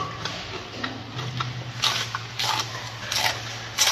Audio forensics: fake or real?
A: real